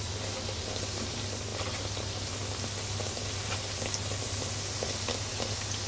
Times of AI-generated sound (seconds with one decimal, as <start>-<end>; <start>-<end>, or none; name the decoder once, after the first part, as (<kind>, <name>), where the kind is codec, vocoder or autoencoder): none